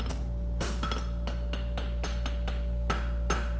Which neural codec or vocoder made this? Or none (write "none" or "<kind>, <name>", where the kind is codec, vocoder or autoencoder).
none